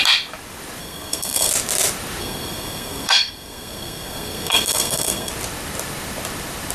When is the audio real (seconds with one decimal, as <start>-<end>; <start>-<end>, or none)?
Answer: 0.0-0.8; 1.5-2.2; 5.3-6.7